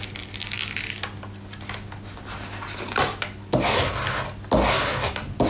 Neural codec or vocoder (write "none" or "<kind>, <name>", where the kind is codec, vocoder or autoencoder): none